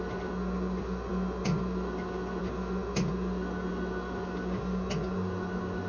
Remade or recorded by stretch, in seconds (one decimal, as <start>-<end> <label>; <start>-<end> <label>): 0.0-5.9 recorded